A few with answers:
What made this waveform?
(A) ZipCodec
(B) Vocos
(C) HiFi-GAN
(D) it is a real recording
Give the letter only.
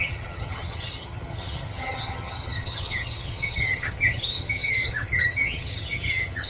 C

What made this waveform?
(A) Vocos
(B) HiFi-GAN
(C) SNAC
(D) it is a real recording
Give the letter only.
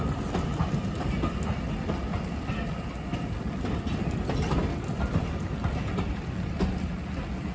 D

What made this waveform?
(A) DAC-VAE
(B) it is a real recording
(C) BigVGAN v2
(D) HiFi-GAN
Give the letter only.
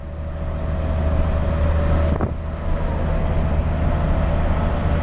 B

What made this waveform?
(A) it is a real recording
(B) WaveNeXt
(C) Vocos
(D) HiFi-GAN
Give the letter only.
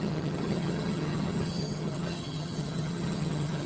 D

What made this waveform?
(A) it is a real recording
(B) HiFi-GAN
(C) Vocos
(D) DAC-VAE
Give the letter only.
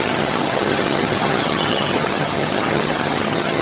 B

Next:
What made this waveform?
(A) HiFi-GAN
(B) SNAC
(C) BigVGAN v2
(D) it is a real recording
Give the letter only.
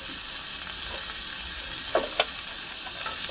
D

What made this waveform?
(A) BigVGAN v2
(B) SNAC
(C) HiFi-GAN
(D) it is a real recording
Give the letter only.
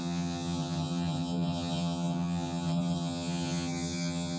C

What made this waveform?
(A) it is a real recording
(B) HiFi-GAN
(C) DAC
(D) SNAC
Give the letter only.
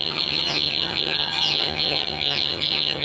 B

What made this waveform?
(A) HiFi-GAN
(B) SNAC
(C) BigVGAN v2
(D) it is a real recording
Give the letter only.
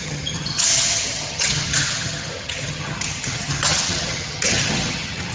A